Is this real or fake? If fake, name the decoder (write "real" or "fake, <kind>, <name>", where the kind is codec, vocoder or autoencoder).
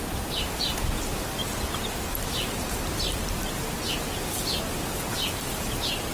real